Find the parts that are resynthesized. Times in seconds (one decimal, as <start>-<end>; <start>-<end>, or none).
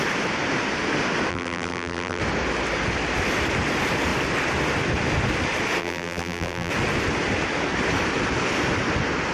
1.3-2.2; 5.8-6.7